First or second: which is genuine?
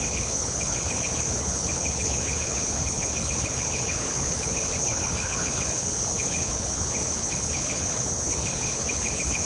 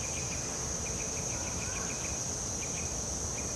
second